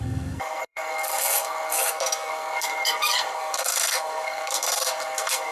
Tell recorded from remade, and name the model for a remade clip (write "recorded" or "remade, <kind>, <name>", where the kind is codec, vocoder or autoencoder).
remade, codec, SNAC